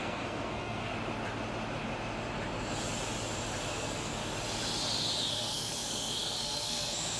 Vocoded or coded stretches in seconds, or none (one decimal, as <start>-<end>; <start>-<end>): 0.0-0.9; 3.7-4.2; 5.3-7.2